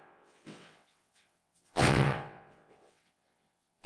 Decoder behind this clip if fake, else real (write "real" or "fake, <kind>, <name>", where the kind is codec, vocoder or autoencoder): fake, vocoder, WaveNeXt